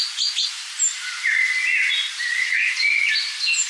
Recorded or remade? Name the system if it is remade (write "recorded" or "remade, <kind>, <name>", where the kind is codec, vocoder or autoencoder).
recorded